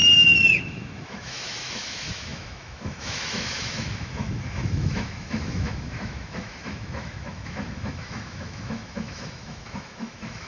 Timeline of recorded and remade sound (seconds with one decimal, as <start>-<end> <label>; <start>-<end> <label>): 0.0-0.6 recorded; 0.6-10.5 remade